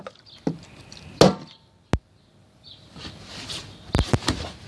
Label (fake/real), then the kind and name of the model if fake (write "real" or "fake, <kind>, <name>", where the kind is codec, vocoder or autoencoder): real